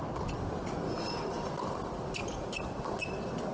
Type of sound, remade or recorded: remade